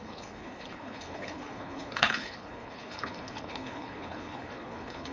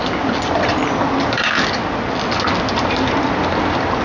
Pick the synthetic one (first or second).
first